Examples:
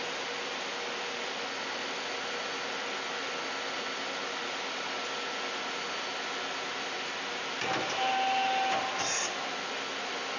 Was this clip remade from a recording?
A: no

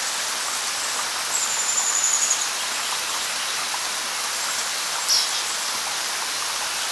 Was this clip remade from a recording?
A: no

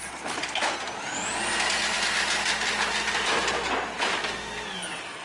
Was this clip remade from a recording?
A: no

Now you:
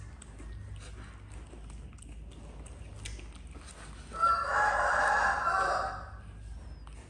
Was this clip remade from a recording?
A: no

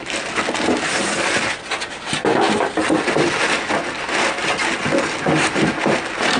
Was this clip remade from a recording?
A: no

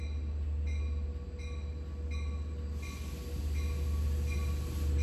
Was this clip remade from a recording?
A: no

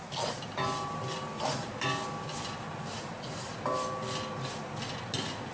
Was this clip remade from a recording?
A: no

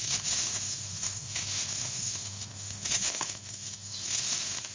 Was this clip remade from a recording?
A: yes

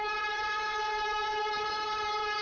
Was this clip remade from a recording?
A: yes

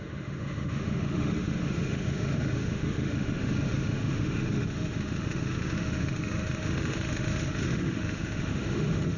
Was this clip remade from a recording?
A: yes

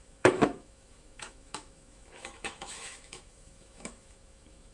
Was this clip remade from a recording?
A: yes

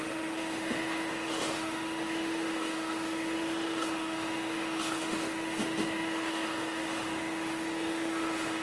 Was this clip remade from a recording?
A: yes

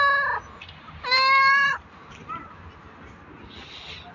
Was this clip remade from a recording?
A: no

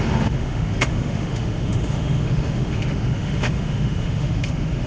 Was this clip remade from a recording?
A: yes